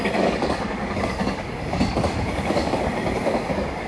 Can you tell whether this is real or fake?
fake